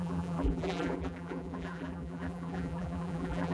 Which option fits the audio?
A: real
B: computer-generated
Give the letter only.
B